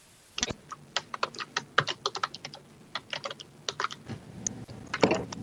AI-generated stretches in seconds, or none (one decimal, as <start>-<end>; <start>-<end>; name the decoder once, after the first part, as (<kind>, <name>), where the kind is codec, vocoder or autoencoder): none